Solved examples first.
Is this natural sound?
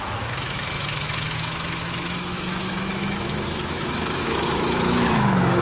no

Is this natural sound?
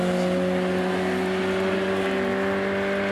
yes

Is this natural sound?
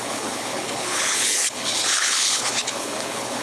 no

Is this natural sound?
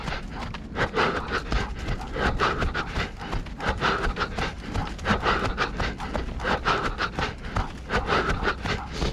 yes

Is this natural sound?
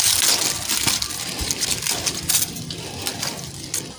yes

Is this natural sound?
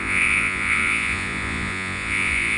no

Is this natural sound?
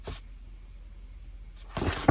yes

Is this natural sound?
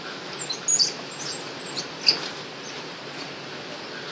yes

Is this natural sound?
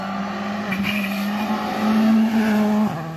yes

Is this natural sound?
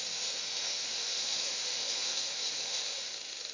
no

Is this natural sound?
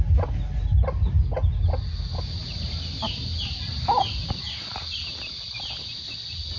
yes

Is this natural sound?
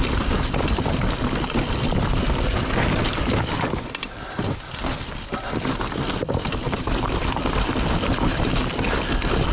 yes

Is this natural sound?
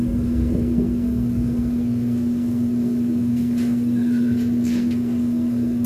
no